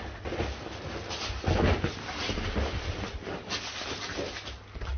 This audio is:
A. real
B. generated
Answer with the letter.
A